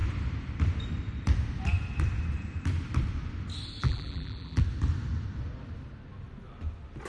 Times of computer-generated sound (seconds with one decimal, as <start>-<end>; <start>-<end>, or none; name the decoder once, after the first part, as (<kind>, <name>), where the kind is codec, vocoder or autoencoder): 3.8-4.6 (vocoder, BigVGAN v2)